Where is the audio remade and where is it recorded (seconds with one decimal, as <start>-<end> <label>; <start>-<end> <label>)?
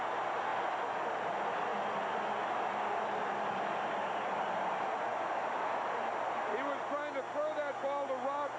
0.0-8.6 recorded